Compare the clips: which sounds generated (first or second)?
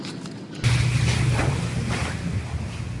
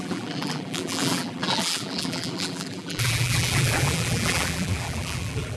second